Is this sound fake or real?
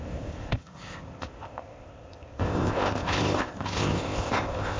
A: fake